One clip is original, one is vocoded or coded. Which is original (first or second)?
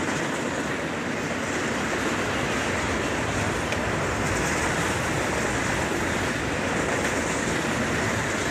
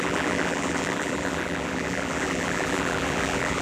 first